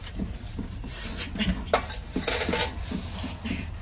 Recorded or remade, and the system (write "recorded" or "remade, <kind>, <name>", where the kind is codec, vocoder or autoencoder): recorded